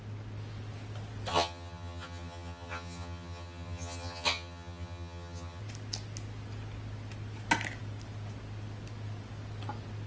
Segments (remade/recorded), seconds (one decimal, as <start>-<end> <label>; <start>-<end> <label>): 0.0-1.3 recorded; 1.3-5.6 remade; 5.6-10.1 recorded